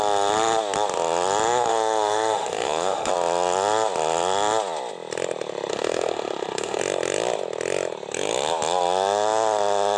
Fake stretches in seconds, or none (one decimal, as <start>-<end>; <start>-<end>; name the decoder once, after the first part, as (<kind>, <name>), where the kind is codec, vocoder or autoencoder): 1.7-3.1 (autoencoder, DAC-VAE); 5.7-6.8